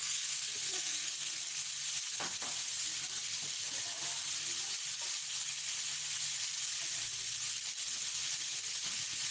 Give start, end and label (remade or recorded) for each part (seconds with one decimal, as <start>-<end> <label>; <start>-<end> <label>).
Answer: 0.0-1.4 remade; 1.4-9.3 recorded

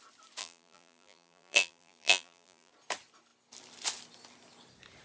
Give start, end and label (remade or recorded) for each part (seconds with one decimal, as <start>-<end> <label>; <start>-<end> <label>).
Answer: 0.0-0.4 recorded; 0.4-2.7 remade; 2.7-5.0 recorded

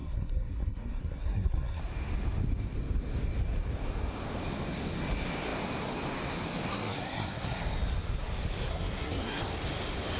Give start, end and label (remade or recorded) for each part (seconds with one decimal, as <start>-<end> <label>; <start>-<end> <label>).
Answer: 0.0-1.8 remade; 1.8-6.7 recorded; 6.7-7.6 remade; 7.6-8.7 recorded; 8.7-9.4 remade; 9.4-10.2 recorded

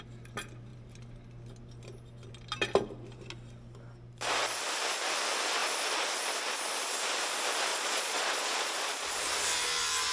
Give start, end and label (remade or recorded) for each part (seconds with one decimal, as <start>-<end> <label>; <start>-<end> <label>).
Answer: 0.0-7.7 recorded; 7.7-9.1 remade; 9.1-10.1 recorded

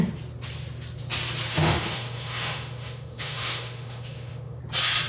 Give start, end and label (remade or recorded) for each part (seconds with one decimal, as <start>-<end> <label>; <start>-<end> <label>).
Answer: 0.0-1.5 recorded; 1.5-4.6 remade; 4.6-5.1 recorded

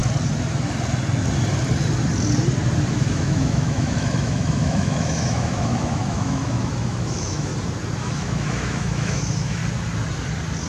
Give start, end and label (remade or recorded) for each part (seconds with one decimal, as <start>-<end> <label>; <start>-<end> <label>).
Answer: 0.0-2.9 recorded; 2.9-7.5 remade; 7.5-8.0 recorded; 8.0-9.6 remade; 9.6-10.7 recorded

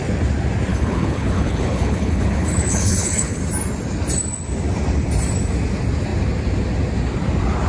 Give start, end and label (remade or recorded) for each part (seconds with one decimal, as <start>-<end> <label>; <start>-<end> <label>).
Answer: 0.0-0.7 recorded; 0.7-3.4 remade; 3.4-7.7 recorded

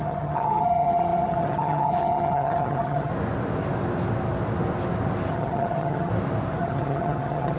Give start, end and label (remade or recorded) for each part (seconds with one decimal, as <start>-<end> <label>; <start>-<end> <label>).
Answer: 0.0-3.1 remade; 3.1-5.3 recorded; 5.3-6.1 remade; 6.1-6.6 recorded; 6.6-7.6 remade